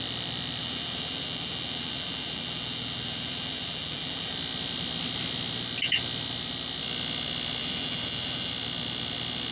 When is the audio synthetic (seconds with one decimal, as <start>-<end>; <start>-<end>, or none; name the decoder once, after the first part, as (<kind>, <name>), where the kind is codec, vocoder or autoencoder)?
0.6-4.3 (vocoder, BigVGAN v2); 7.6-8.5

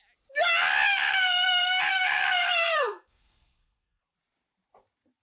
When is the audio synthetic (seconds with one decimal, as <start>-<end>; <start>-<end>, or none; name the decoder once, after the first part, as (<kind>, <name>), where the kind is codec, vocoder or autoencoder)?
0.9-4.0 (codec, SNAC)

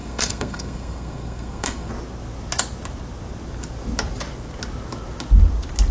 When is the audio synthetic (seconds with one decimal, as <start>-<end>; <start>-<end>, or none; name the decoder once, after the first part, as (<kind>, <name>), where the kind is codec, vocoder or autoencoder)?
0.0-1.9 (codec, SNAC)

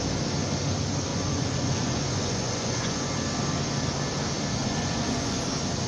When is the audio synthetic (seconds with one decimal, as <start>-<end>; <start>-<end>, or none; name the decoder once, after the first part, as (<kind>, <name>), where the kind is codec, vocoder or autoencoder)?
1.1-3.1 (vocoder, Vocos); 4.6-5.4

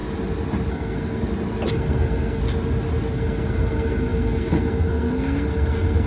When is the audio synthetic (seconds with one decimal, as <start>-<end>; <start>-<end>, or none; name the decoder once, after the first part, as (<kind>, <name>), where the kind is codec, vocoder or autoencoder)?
0.7-1.2 (codec, SNAC); 1.7-2.4; 3.1-6.1

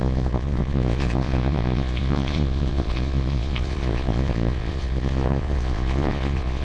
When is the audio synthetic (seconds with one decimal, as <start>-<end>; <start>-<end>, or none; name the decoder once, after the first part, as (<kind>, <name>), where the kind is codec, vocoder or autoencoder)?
0.0-6.6 (vocoder, Vocos)

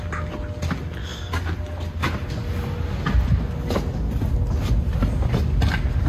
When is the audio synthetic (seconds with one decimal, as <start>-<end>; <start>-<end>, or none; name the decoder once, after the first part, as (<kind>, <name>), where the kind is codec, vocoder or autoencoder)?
none